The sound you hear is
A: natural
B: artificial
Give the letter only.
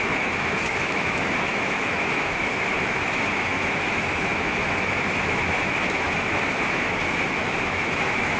B